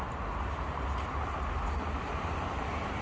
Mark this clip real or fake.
real